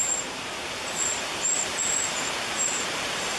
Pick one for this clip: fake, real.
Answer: fake